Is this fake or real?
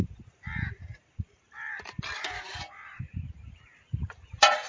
fake